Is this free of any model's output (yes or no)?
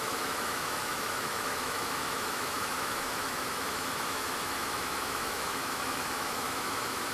no